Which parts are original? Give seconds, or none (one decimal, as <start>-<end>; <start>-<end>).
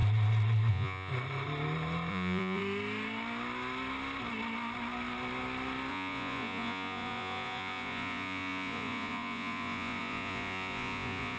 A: 0.0-0.7; 1.1-2.1; 2.6-5.9